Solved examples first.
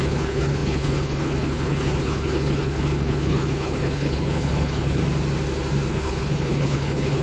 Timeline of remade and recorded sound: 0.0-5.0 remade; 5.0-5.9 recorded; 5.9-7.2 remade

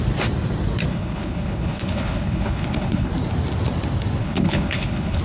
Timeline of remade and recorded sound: 0.0-0.9 recorded; 0.9-3.1 remade; 3.1-4.2 recorded; 4.2-5.2 remade

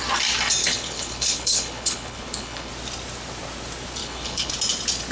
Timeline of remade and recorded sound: 0.0-0.6 recorded; 0.6-2.7 remade; 2.7-4.0 recorded; 4.0-4.5 remade; 4.5-5.1 recorded

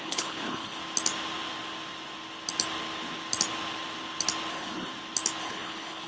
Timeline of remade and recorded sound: 0.0-0.8 remade; 0.8-4.5 recorded; 4.5-4.9 remade; 4.9-5.4 recorded; 5.4-6.1 remade

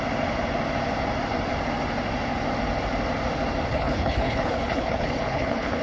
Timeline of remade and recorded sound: 0.0-3.7 recorded; 3.7-5.8 remade

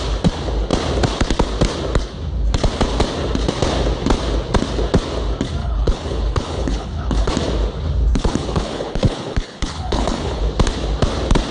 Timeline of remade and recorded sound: 0.0-5.6 recorded; 5.6-7.3 remade; 7.3-8.1 recorded; 8.1-10.4 remade; 10.4-11.5 recorded